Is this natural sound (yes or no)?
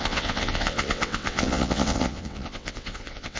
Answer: no